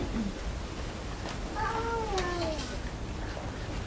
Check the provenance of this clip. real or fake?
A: real